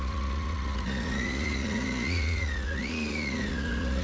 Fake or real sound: fake